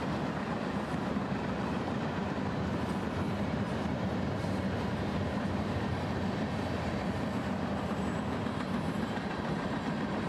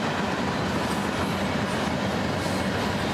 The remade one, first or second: first